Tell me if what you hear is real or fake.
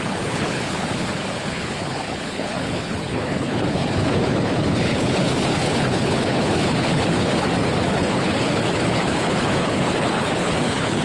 fake